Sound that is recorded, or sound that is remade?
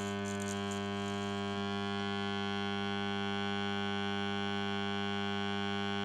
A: recorded